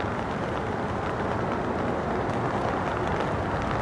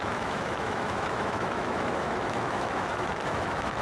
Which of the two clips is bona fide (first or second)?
first